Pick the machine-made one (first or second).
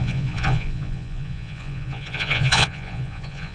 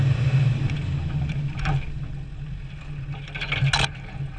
first